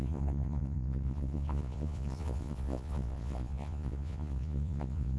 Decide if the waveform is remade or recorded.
remade